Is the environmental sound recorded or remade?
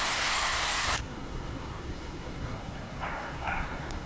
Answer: remade